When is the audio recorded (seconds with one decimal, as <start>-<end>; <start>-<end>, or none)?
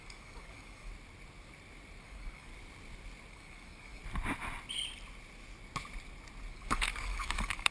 0.9-2.0; 2.5-3.3; 4.0-6.5